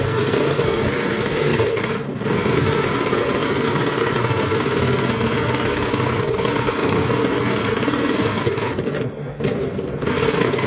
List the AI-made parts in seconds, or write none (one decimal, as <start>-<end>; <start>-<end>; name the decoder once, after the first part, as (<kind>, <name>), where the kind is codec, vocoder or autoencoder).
0.0-10.7 (codec, SNAC)